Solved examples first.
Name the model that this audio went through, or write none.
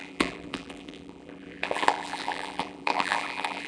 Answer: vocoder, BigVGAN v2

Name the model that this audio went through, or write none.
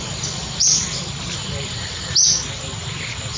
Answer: none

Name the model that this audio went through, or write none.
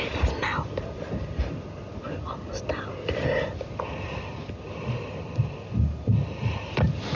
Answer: none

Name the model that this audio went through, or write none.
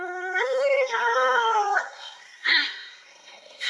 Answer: codec, SNAC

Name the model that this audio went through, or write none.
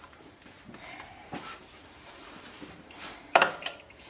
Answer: vocoder, BigVGAN v2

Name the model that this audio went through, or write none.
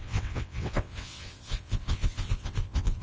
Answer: vocoder, WaveNeXt